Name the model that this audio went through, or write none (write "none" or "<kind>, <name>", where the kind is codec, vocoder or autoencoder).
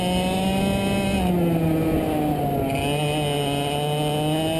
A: none